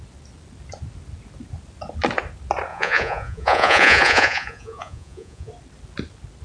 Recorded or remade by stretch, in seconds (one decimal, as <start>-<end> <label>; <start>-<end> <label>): 0.0-2.7 recorded; 2.7-5.5 remade; 5.5-6.4 recorded